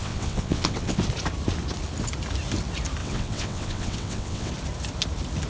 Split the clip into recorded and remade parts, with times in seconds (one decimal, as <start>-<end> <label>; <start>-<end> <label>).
0.0-1.0 remade; 1.0-3.0 recorded; 3.0-4.5 remade; 4.5-5.5 recorded